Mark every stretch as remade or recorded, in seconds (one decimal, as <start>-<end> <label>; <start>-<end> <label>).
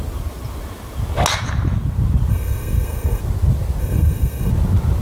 0.0-2.3 recorded; 2.3-3.2 remade; 3.2-3.8 recorded; 3.8-4.5 remade; 4.5-5.0 recorded